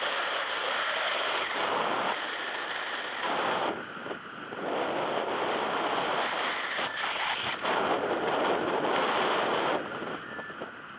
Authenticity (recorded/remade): recorded